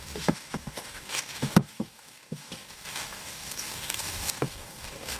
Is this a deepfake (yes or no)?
yes